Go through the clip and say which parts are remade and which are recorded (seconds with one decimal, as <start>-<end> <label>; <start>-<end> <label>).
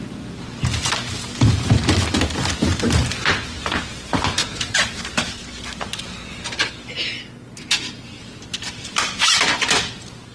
0.0-4.4 recorded; 4.4-5.0 remade; 5.0-10.3 recorded